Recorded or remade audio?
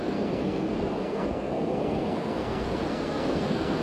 remade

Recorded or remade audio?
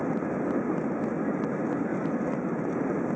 recorded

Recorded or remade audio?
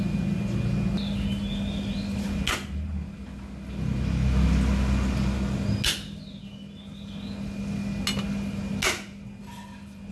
recorded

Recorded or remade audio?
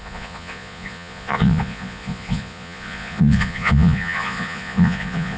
remade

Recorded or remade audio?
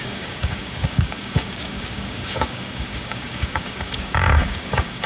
remade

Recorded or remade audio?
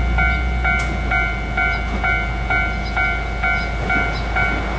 recorded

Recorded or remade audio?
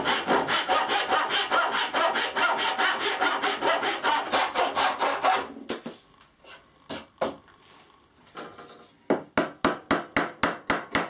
recorded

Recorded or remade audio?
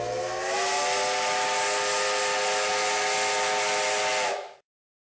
recorded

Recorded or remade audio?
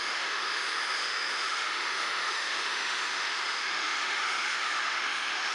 remade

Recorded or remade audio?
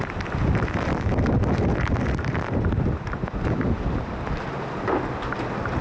recorded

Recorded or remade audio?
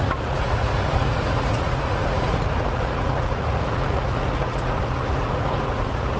remade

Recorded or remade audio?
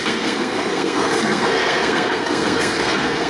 remade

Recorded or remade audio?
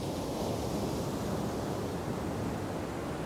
recorded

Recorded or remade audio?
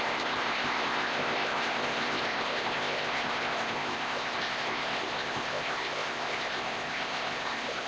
remade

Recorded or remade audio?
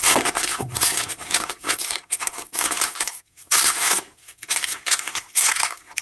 remade